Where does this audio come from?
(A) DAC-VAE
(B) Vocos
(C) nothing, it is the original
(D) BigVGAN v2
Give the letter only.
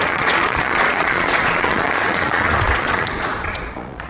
B